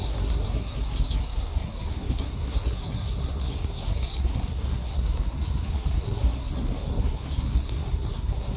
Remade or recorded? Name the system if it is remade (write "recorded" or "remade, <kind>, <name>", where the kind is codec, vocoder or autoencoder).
remade, codec, SNAC